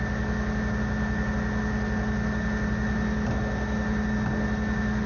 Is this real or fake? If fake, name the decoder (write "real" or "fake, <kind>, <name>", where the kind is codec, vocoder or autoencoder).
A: real